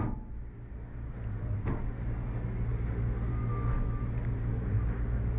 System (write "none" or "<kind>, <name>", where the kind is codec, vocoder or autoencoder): none